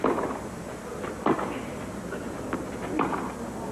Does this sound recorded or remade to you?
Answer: recorded